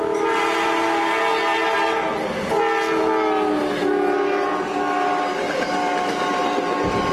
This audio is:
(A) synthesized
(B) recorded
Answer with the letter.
B